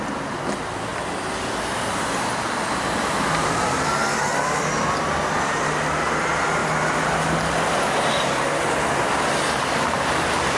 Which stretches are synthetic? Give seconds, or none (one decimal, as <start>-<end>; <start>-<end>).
0.9-3.5